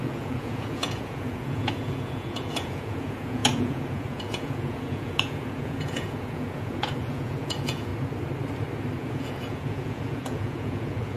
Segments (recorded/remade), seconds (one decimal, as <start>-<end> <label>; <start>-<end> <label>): 0.0-7.9 remade; 7.9-9.0 recorded; 9.0-11.2 remade